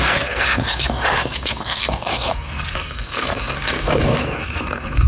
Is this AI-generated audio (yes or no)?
yes